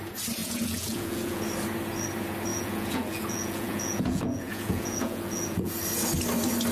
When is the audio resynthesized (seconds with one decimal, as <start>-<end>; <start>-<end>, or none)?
0.4-1.4; 2.5-5.7